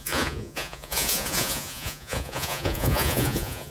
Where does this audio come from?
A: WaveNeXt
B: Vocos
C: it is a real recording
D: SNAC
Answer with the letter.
B